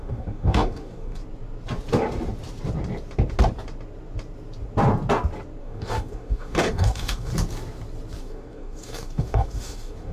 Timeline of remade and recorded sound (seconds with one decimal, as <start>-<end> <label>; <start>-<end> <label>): 0.0-1.2 remade; 1.2-5.6 recorded; 5.6-7.3 remade; 7.3-8.2 recorded; 8.2-10.1 remade